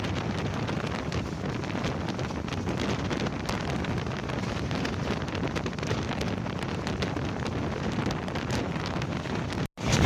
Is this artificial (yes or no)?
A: no